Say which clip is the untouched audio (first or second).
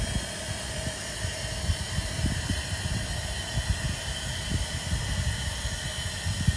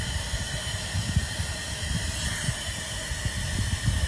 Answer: first